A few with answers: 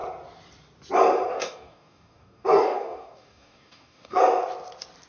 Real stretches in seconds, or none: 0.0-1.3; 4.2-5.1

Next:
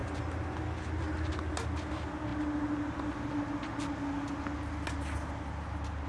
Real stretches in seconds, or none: 0.0-6.1

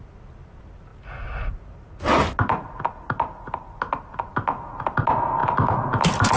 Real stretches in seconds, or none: 0.0-6.4

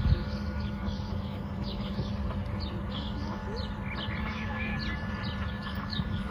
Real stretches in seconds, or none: 2.1-2.9; 3.4-4.2; 4.7-5.5

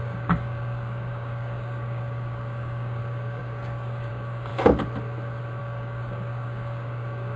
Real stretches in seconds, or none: 4.5-5.6

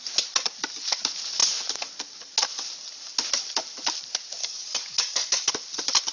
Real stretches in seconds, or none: 0.0-4.4; 5.5-6.1

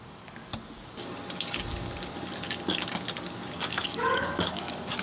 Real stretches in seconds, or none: 0.5-3.5